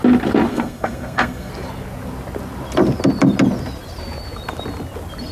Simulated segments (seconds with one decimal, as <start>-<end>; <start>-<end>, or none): 0.5-1.5